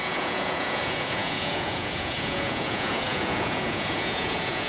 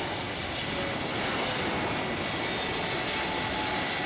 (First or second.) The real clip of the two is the second